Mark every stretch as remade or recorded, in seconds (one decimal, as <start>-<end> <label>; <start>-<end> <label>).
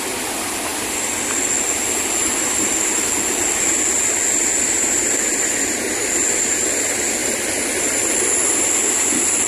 0.0-9.5 recorded